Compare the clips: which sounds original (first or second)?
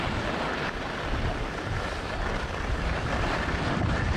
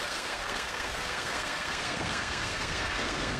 first